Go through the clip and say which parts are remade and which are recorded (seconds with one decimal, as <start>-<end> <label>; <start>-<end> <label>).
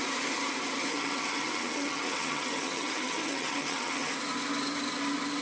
0.0-0.9 recorded; 0.9-4.1 remade; 4.1-5.4 recorded